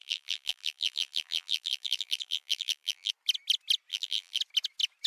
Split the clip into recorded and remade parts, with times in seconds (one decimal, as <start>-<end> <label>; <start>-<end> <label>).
0.0-3.1 remade; 3.1-3.9 recorded; 3.9-4.4 remade; 4.4-5.1 recorded